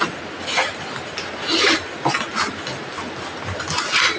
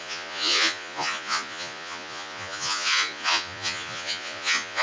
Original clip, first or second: first